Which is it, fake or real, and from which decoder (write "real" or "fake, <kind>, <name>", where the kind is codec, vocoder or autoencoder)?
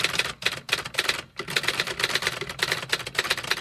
real